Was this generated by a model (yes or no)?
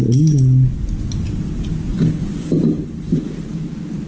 no